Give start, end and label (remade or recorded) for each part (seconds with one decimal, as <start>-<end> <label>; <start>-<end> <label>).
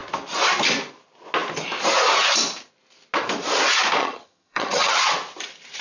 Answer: 0.0-4.0 recorded; 4.0-5.0 remade; 5.0-5.8 recorded